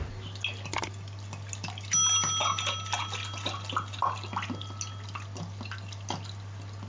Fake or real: real